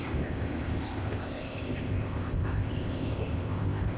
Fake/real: fake